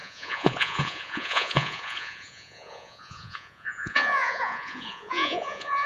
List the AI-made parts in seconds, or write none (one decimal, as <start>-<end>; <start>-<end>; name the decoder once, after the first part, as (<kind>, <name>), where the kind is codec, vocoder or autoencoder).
0.0-5.9 (vocoder, Vocos)